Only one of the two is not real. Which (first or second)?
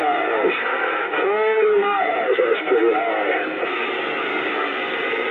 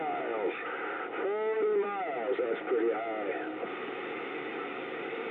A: first